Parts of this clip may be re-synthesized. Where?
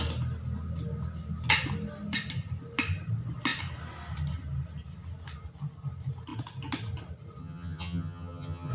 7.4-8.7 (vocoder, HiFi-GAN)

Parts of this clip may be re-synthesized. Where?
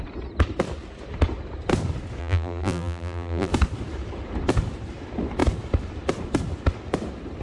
2.2-3.5 (vocoder, BigVGAN v2)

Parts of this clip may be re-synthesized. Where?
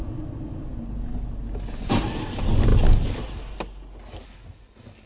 none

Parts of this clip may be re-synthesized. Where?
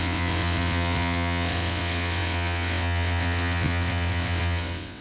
0.0-5.0 (vocoder, WaveNeXt)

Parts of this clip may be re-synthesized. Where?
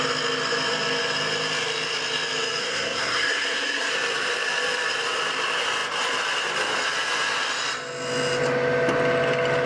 2.6-3.9 (codec, SNAC)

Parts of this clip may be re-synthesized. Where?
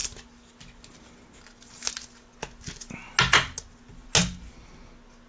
none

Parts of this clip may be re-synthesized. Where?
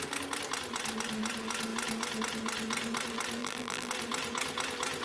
3.4-3.9 (vocoder, BigVGAN v2)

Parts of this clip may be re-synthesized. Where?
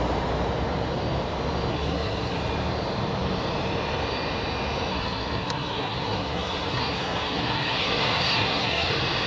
1.7-2.4 (codec, SNAC); 4.9-8.9